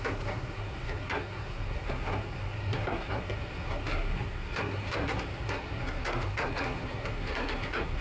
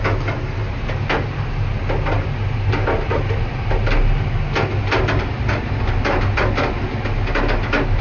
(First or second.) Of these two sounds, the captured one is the second